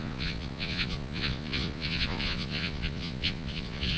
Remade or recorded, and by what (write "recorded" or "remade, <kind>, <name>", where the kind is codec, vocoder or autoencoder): remade, vocoder, Vocos